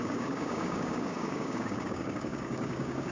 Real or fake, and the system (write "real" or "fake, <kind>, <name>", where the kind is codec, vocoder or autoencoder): fake, codec, DAC